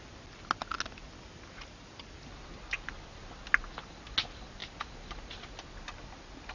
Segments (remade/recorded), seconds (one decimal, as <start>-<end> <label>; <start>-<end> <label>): 0.0-6.5 recorded